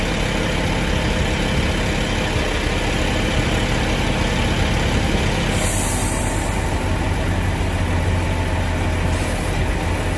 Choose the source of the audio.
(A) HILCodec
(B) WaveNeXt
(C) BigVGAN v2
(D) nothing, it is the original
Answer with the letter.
D